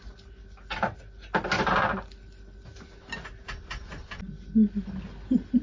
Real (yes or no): yes